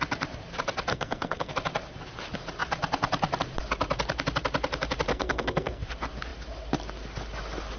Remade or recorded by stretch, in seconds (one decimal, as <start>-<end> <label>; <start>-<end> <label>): 0.0-0.9 recorded; 0.9-1.5 remade; 1.5-5.1 recorded; 5.1-5.8 remade; 5.8-7.8 recorded